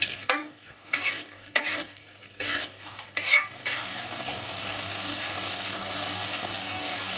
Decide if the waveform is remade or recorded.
remade